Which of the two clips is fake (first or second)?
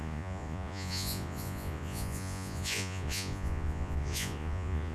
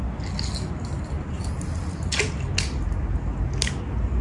first